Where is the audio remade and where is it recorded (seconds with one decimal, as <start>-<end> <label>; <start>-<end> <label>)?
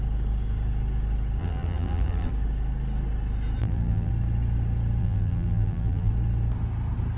0.0-1.4 recorded; 1.4-2.3 remade; 2.3-3.6 recorded; 3.6-4.1 remade; 4.1-5.0 recorded; 5.0-6.1 remade; 6.1-7.2 recorded